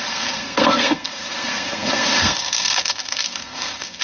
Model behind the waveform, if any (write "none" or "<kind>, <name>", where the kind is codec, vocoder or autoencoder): codec, SNAC